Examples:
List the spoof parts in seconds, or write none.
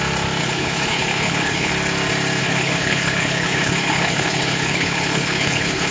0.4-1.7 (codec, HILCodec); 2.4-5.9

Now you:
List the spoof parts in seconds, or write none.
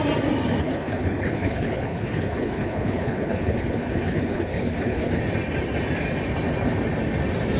0.6-5.2 (codec, HILCodec)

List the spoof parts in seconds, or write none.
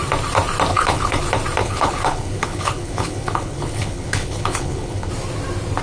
0.7-1.2 (codec, HILCodec); 1.6-5.1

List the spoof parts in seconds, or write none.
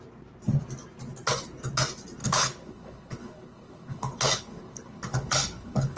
2.2-6.0 (codec, HILCodec)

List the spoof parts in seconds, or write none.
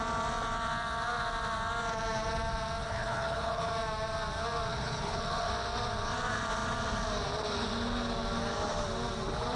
2.8-3.7 (codec, HILCodec); 4.7-5.5